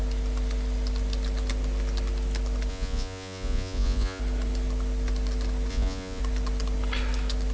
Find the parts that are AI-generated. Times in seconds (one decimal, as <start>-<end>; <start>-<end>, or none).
2.7-4.2; 5.7-6.2